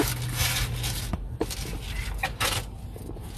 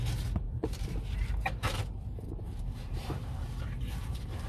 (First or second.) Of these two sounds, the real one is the first